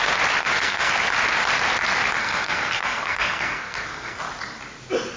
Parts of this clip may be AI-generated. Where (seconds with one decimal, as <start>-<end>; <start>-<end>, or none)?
0.4-0.9; 2.2-4.2